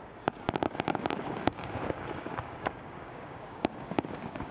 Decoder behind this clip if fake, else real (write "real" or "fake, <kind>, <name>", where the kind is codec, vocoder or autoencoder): fake, codec, DAC